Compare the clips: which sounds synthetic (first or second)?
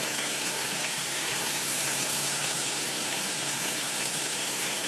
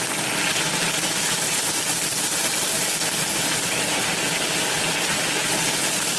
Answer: first